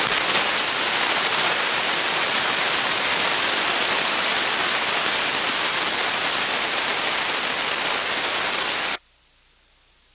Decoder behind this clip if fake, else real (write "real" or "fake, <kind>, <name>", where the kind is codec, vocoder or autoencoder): real